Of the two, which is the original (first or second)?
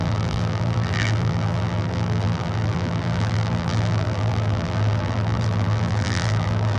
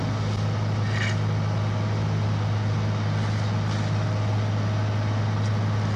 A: second